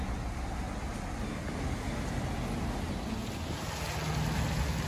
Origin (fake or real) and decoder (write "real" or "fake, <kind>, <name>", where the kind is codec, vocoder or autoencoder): real